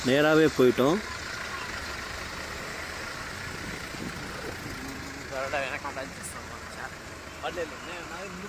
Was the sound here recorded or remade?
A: recorded